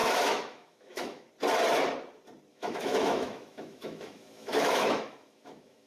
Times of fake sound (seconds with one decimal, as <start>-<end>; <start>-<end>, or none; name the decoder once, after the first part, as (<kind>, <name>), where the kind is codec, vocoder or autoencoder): 0.0-1.3 (autoencoder, DAC-VAE); 2.5-5.9